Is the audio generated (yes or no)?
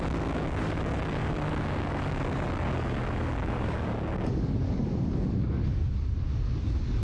yes